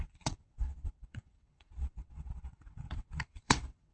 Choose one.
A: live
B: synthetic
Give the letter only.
B